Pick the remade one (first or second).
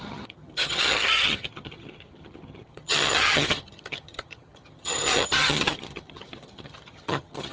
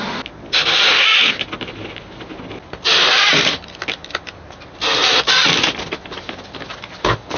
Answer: first